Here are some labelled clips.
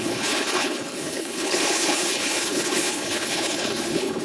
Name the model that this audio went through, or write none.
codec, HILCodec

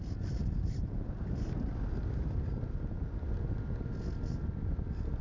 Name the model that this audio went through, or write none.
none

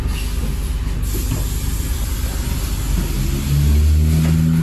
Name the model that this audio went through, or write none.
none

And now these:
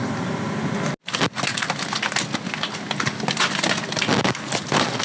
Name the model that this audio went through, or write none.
none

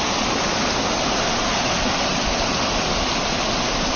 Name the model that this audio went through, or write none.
none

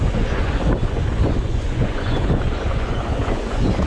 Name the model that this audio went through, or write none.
vocoder, Vocos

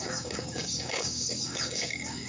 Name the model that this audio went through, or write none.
codec, DAC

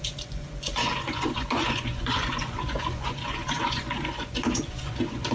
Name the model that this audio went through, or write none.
vocoder, Vocos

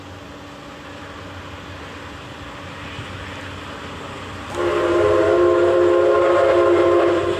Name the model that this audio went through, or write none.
none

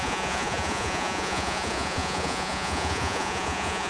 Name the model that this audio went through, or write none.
vocoder, Vocos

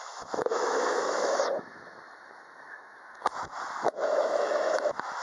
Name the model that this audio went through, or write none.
autoencoder, DAC-VAE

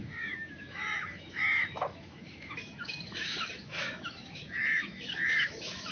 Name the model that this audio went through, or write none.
autoencoder, DAC-VAE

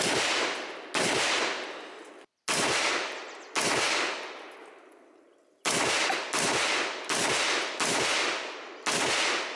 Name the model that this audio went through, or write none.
none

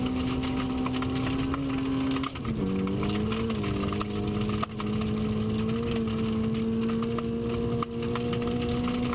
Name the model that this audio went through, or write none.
none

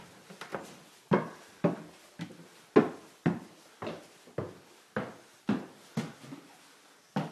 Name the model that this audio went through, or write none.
none